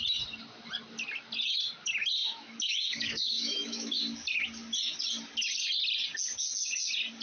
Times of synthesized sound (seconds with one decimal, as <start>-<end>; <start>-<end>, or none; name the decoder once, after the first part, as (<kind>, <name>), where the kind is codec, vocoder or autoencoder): 2.2-4.0 (autoencoder, DAC-VAE)